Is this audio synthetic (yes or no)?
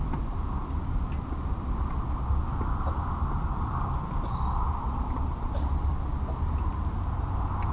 no